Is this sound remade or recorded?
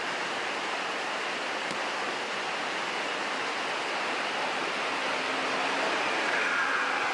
recorded